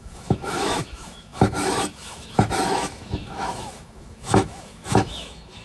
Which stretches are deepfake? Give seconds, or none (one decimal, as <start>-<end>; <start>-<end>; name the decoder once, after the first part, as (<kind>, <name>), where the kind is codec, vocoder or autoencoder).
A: 0.0-5.6 (autoencoder, DAC-VAE)